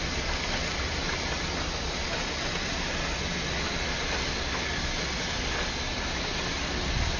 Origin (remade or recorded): recorded